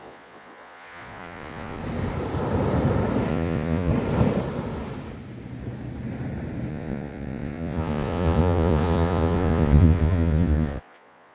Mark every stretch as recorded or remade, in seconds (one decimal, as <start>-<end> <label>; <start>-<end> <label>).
0.0-1.8 remade; 1.8-3.3 recorded; 3.3-3.9 remade; 3.9-6.7 recorded; 6.7-11.3 remade